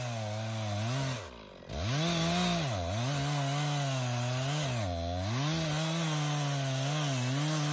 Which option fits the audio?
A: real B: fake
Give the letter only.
A